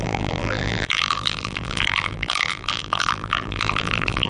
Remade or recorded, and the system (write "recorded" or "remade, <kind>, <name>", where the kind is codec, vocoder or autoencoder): remade, vocoder, BigVGAN v2